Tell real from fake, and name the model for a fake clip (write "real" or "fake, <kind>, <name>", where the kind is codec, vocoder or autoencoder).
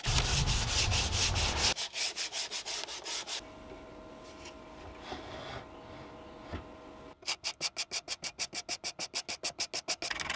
real